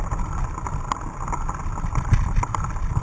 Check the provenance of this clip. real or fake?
real